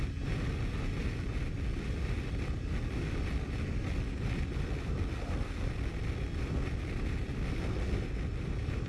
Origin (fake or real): real